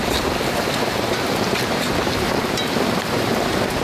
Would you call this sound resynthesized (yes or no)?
yes